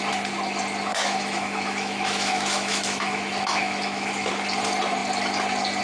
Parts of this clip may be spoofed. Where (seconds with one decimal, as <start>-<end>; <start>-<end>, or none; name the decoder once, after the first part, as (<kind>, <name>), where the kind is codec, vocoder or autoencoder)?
0.9-4.3 (autoencoder, DAC-VAE)